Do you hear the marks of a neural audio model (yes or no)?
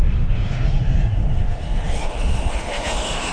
yes